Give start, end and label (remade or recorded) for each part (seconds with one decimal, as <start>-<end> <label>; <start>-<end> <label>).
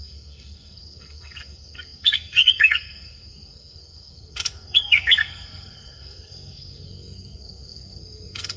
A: 0.0-8.6 remade